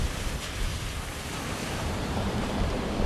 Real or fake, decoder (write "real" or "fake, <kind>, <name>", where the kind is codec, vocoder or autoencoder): fake, vocoder, BigVGAN v2